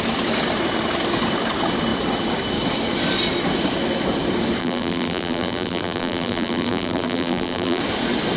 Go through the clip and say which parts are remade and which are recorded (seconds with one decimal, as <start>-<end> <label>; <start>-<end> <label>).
0.0-4.6 recorded; 4.6-7.8 remade; 7.8-8.4 recorded